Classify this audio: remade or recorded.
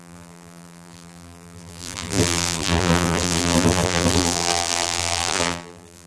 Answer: remade